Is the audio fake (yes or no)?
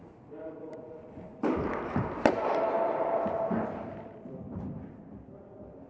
no